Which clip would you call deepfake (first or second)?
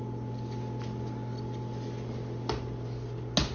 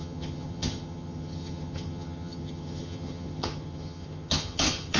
second